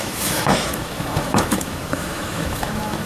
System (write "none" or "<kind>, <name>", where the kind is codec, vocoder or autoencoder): autoencoder, DAC-VAE